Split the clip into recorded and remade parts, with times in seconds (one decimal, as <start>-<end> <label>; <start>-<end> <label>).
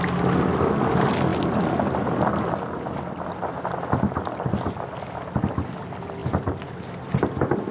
0.0-7.7 recorded